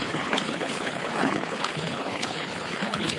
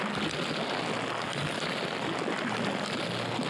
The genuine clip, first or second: second